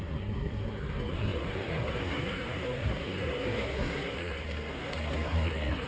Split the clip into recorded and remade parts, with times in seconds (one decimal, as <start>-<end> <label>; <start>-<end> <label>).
0.0-5.9 remade